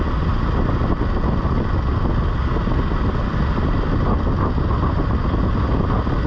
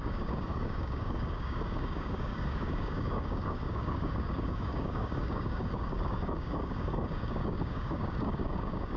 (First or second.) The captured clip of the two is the first